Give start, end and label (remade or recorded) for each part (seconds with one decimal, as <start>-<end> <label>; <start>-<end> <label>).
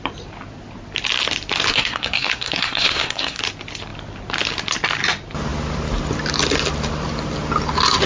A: 0.0-1.7 recorded; 1.7-3.4 remade; 3.4-8.1 recorded